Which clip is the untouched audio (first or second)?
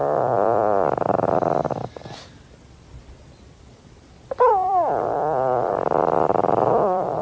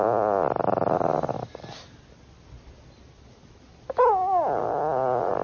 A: second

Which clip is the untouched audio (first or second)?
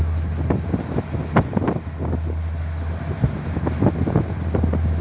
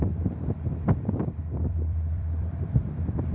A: first